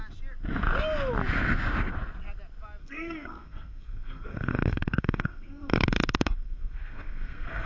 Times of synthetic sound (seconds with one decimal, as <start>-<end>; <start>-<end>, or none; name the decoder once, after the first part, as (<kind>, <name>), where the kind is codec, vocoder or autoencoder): 2.8-7.7 (codec, SNAC)

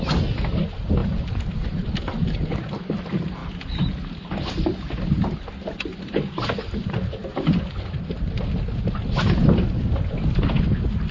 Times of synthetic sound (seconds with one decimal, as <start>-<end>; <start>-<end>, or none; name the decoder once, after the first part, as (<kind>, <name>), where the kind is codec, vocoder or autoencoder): 1.0-2.8 (vocoder, BigVGAN v2)

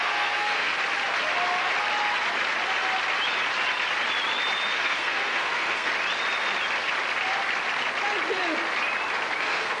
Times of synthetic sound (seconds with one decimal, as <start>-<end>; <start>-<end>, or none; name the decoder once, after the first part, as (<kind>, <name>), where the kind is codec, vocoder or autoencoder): 0.0-0.7 (codec, SNAC); 4.8-5.9; 9.4-9.8